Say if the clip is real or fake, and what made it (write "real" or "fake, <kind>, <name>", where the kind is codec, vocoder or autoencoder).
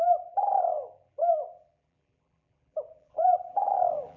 fake, vocoder, BigVGAN v2